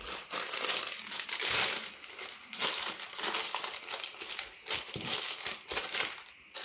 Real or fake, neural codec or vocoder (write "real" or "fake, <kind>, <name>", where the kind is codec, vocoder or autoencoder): real